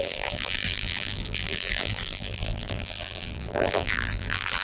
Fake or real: fake